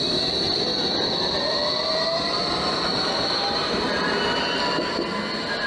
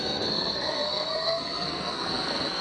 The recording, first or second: first